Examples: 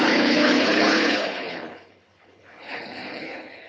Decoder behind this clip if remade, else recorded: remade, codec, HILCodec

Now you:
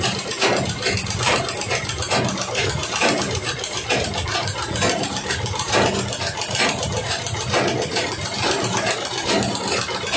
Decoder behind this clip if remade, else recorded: remade, vocoder, BigVGAN v2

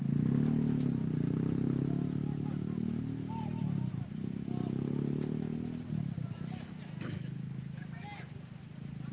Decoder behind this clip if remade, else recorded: recorded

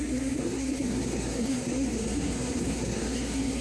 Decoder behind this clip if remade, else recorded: remade, codec, SNAC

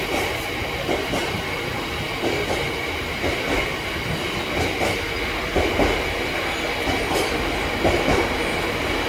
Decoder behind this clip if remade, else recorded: recorded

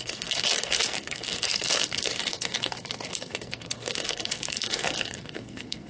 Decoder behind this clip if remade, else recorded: remade, codec, SNAC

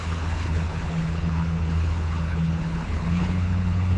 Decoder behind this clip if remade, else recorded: remade, codec, HILCodec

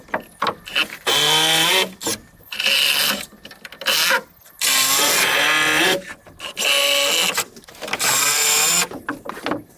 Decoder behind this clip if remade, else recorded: recorded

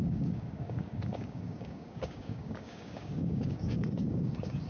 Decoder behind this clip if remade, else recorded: remade, codec, DAC